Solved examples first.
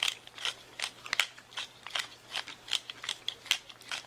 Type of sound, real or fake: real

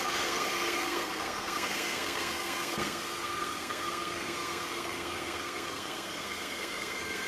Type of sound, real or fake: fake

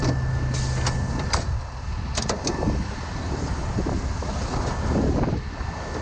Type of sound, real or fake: real